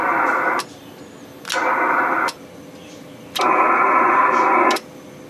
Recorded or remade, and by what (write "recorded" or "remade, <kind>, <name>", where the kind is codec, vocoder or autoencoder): recorded